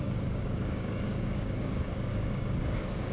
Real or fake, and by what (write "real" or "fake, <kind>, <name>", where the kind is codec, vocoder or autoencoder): fake, codec, DAC